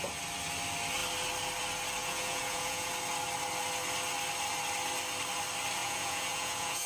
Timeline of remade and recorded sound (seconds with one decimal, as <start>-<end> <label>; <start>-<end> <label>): 0.0-2.0 recorded; 2.0-2.9 remade; 2.9-5.8 recorded; 5.8-6.9 remade